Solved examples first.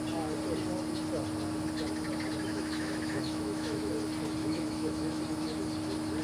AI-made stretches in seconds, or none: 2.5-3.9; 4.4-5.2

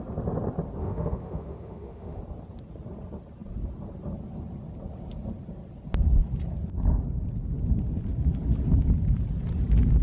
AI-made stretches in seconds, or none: 0.8-2.2

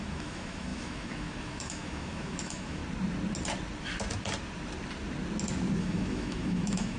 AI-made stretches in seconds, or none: 0.0-2.8; 5.8-7.0

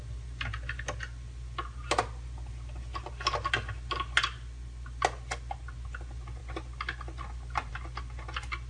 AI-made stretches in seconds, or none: none

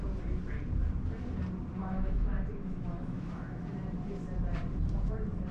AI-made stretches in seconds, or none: 1.8-3.7

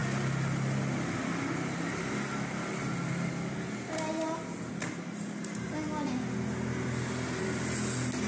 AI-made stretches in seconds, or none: none

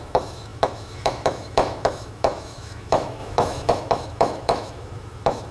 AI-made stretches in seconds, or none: 0.0-5.5